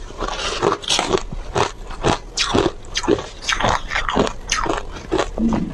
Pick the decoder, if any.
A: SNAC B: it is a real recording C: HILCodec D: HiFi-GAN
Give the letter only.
B